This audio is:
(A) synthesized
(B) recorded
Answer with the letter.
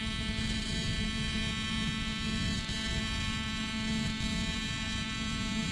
B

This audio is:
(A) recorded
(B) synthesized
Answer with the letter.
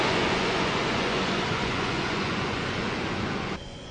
B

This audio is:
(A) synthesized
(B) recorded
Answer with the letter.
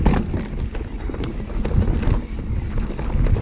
B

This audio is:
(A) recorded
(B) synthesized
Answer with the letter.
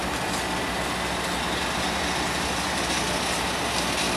A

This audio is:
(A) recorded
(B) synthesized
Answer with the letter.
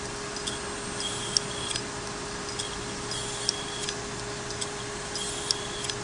A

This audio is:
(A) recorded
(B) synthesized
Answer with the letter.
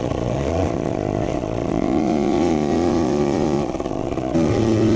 B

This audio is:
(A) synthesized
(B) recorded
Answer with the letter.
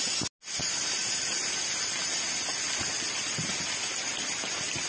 B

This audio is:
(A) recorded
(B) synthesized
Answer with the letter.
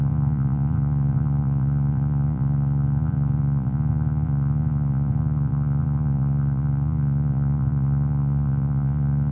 B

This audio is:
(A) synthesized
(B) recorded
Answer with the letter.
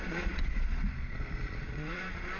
A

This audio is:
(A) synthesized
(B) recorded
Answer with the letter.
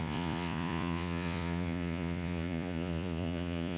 A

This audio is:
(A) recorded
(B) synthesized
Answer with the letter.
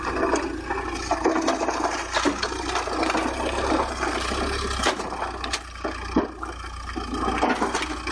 A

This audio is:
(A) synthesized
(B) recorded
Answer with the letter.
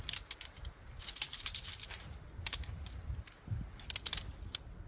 B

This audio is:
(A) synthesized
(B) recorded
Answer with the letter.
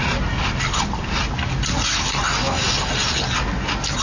B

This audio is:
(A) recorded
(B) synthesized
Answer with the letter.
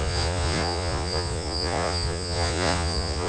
B